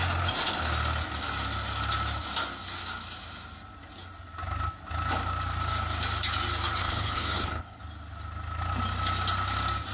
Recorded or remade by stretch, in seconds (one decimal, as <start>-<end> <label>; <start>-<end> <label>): 0.0-6.8 recorded; 6.8-7.8 remade; 7.8-9.9 recorded